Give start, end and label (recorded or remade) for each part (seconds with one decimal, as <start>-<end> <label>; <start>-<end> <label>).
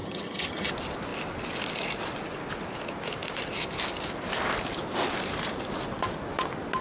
0.0-0.7 remade; 0.7-6.8 recorded